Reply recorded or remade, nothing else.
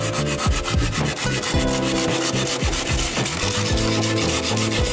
recorded